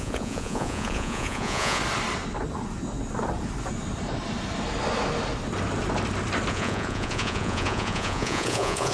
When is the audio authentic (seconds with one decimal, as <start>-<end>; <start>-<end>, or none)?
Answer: 1.8-6.5